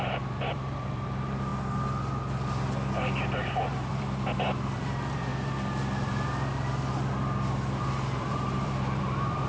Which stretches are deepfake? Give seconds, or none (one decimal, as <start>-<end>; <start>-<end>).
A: 0.0-1.5; 3.4-5.3; 7.8-9.5